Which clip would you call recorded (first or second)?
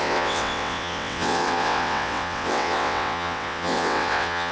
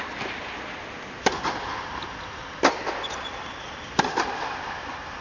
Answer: second